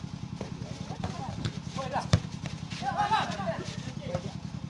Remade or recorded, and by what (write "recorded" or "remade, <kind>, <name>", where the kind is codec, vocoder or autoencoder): remade, vocoder, BigVGAN v2